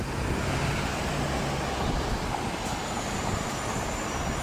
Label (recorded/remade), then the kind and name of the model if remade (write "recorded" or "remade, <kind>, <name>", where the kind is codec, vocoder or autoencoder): recorded